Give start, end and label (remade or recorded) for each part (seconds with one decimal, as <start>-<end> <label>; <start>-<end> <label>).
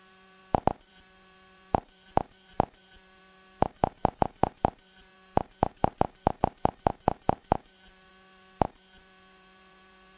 0.0-0.4 remade; 0.4-0.9 recorded; 0.9-10.2 remade